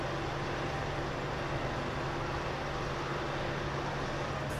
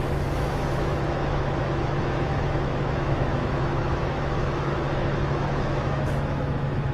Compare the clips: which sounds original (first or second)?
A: first